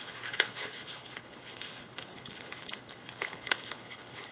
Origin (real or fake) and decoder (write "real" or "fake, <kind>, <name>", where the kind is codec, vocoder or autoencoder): fake, codec, HILCodec